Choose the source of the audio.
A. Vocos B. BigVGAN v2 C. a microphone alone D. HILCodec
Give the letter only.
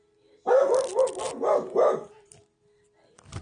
C